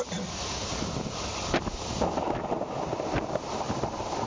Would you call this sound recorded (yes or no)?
yes